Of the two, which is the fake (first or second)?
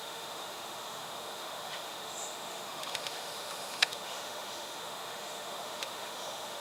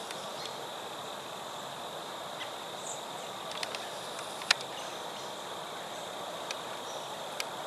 first